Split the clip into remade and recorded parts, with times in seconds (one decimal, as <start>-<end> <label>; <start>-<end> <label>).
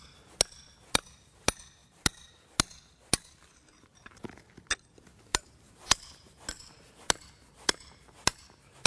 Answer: 0.0-1.8 recorded; 1.8-2.4 remade; 2.4-3.9 recorded; 3.9-4.5 remade; 4.5-5.3 recorded; 5.3-6.5 remade; 6.5-8.9 recorded